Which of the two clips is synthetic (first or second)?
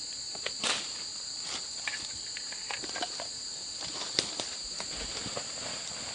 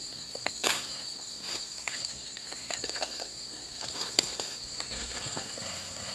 second